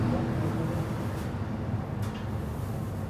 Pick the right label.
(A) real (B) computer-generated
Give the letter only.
A